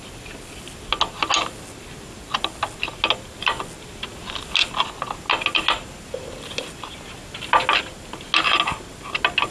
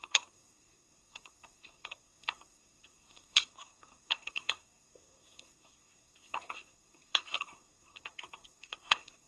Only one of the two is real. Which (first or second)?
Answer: first